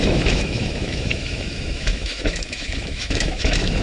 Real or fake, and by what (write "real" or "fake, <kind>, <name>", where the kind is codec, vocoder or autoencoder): fake, autoencoder, DAC-VAE